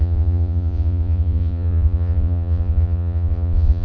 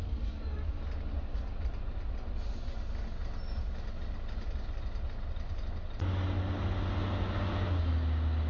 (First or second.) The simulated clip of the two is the first